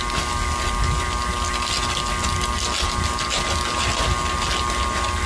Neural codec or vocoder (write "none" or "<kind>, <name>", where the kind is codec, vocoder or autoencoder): none